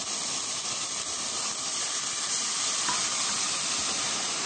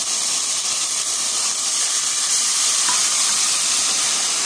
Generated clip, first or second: second